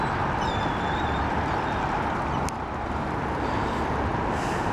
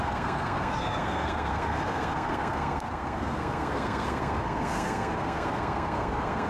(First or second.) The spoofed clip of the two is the second